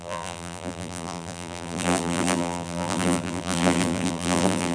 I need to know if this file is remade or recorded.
remade